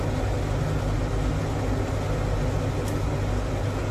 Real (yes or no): yes